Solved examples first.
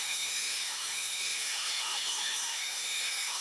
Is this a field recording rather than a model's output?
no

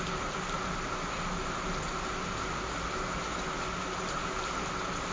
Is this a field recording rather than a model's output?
yes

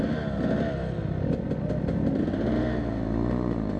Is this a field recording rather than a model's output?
yes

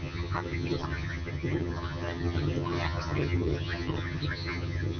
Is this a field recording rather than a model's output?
no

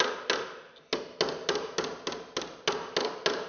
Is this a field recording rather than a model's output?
yes